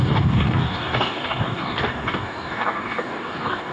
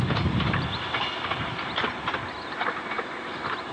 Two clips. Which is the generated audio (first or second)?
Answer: first